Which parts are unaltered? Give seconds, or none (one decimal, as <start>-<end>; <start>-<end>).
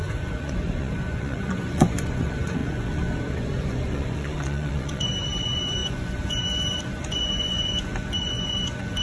none